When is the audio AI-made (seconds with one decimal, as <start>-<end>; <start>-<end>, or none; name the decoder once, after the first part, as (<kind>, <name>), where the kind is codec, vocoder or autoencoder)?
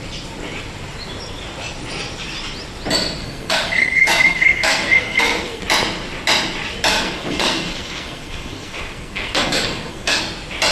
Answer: 3.2-5.6 (codec, SNAC); 6.9-10.2